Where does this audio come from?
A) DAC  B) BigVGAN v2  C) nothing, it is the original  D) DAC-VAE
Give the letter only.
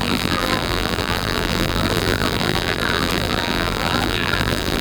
B